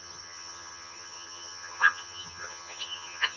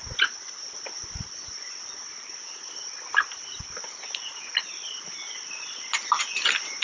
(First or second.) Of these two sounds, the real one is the second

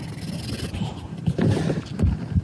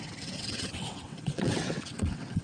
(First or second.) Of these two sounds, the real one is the first